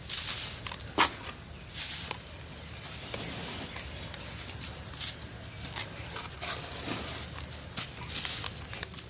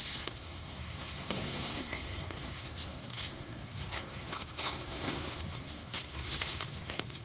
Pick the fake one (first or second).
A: second